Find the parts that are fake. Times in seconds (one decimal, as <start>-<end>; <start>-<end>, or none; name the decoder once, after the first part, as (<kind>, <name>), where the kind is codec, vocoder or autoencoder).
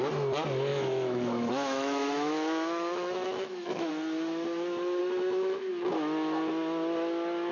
0.7-3.9 (autoencoder, DAC-VAE); 5.0-5.7